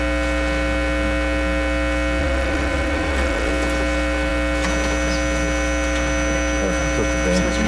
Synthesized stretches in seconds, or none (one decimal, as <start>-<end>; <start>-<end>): 2.2-3.5